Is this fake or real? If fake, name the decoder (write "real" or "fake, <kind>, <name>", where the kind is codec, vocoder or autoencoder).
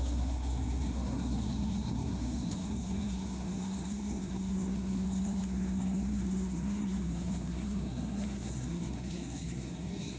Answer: fake, codec, SNAC